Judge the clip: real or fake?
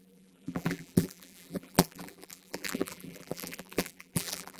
fake